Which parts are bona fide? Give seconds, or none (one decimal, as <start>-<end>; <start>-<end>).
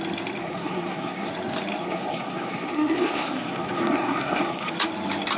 0.0-0.4; 1.3-1.8; 4.7-5.4